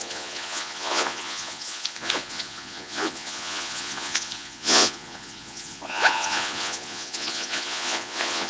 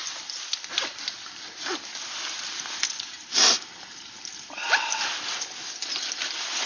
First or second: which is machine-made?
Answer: first